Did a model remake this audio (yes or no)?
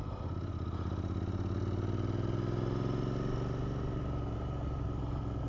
no